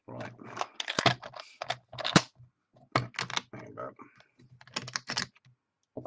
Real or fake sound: real